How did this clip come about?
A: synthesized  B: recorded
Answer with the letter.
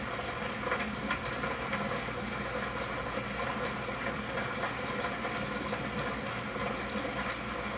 B